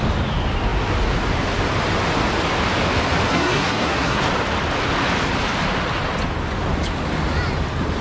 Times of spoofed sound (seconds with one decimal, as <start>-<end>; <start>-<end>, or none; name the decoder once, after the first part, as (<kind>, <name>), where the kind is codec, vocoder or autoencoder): 3.3-4.2 (codec, SNAC)

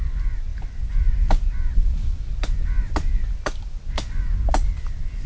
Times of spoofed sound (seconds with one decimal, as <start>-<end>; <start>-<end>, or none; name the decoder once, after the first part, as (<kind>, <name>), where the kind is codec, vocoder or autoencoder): none

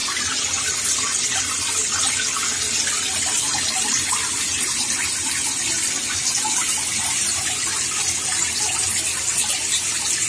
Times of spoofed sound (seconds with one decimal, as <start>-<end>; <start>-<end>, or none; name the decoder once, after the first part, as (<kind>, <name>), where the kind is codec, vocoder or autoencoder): none

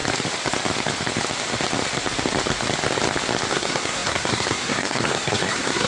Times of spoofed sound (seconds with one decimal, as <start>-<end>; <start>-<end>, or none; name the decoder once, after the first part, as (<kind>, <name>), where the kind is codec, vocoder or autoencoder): 3.5-5.9 (codec, SNAC)

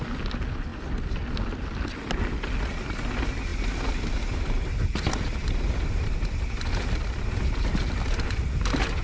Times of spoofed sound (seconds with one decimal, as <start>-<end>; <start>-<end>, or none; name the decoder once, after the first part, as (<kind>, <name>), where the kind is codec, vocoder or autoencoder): none

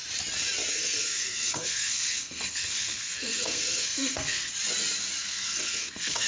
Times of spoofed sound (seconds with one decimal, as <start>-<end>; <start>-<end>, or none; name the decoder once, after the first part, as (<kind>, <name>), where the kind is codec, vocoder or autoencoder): 0.7-4.5 (codec, SNAC); 5.2-6.3